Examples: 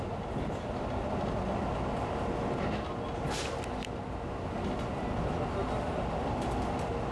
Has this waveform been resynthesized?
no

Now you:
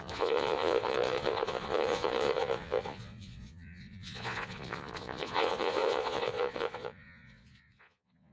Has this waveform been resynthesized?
yes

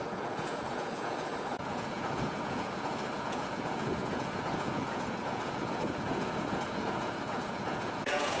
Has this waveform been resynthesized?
yes